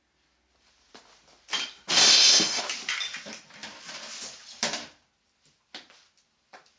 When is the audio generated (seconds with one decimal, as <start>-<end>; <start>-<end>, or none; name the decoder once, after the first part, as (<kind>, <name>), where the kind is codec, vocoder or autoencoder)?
2.0-2.6 (codec, SNAC)